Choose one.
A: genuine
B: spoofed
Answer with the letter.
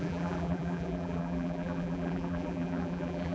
B